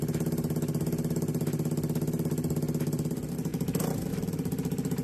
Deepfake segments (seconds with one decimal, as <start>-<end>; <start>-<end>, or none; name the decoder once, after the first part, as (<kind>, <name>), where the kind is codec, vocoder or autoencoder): none